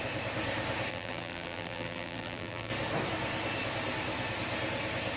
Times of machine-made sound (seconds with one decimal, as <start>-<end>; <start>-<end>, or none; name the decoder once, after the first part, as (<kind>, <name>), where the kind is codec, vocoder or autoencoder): 0.9-2.7 (vocoder, BigVGAN v2)